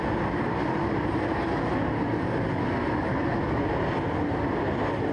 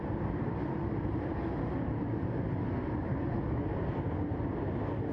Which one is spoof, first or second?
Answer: second